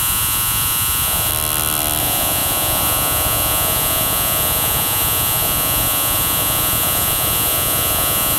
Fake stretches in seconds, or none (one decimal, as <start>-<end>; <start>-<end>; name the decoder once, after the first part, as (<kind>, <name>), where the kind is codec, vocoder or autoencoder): 0.0-1.3 (vocoder, Vocos); 2.0-8.4